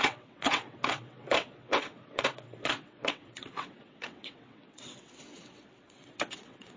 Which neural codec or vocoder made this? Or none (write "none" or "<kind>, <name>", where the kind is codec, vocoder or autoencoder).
vocoder, WaveNeXt